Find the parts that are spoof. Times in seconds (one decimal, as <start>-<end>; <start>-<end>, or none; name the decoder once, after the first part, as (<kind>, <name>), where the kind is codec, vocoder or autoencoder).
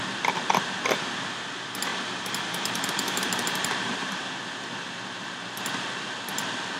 1.9-4.2 (vocoder, BigVGAN v2)